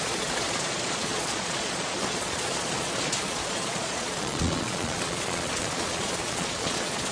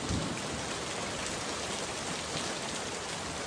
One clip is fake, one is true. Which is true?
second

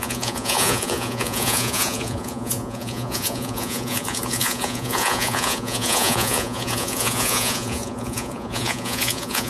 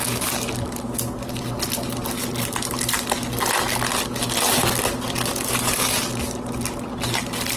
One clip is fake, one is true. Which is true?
second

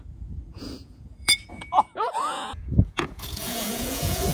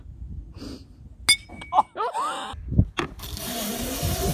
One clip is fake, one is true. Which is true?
second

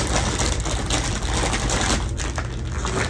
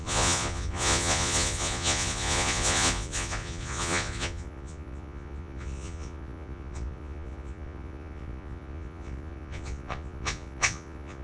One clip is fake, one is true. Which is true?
first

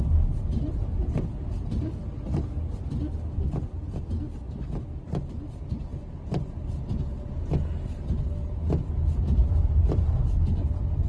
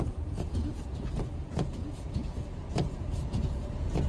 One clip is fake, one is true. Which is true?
first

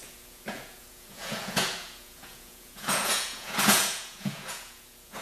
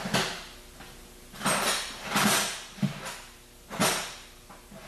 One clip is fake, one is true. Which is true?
second